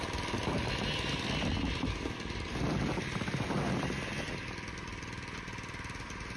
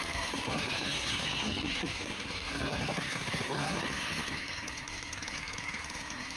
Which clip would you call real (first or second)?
first